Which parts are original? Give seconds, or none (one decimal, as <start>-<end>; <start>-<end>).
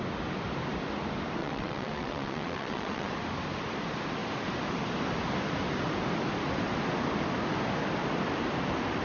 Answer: 0.0-1.4; 3.1-9.0